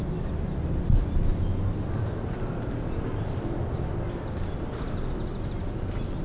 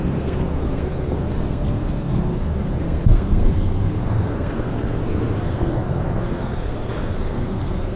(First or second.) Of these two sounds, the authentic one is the first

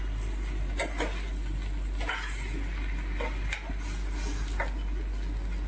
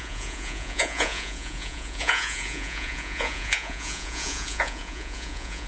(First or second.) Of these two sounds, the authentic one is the first